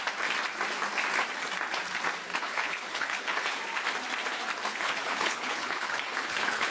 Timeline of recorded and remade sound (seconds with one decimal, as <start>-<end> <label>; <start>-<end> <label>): 0.0-2.3 recorded; 2.3-3.6 remade; 3.6-4.7 recorded; 4.7-6.7 remade